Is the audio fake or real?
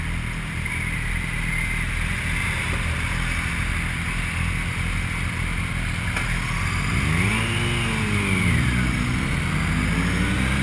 real